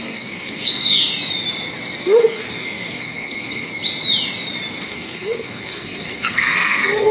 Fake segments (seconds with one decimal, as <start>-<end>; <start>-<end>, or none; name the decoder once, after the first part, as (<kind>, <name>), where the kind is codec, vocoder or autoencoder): 0.0-1.1 (codec, SNAC); 2.0-3.7; 4.8-7.1